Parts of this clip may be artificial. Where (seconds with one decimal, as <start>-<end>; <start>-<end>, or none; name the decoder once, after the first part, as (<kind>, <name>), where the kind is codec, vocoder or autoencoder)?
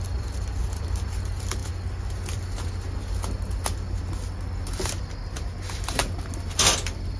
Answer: 0.6-1.2 (vocoder, BigVGAN v2)